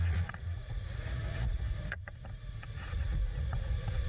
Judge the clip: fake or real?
fake